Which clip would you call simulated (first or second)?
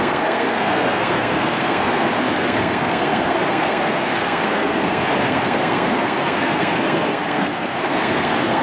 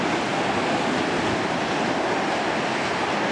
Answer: first